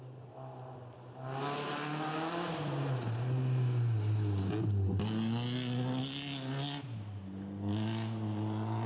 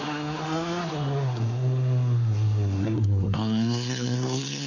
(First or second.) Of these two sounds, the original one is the first